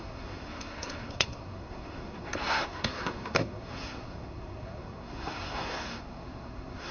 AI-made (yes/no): yes